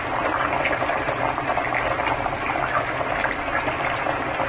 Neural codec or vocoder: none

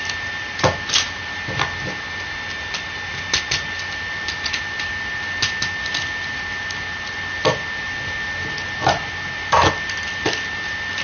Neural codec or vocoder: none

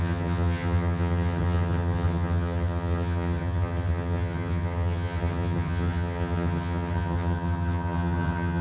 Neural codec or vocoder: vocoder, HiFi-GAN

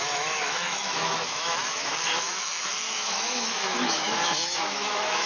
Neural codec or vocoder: autoencoder, DAC-VAE